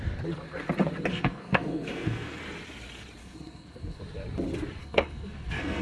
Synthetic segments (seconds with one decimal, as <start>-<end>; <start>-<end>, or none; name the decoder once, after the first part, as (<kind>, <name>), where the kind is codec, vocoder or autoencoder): 1.1-2.4 (codec, SNAC); 3.2-4.0; 4.8-5.8